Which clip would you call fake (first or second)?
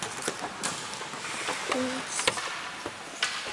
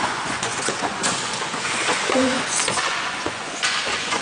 second